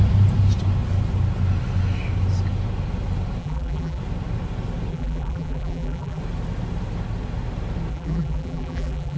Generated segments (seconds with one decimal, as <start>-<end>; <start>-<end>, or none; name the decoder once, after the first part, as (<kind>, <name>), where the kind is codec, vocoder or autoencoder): 3.4-4.0 (vocoder, BigVGAN v2); 4.9-6.2; 7.9-9.2